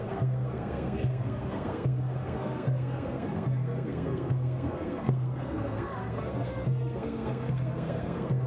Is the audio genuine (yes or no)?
no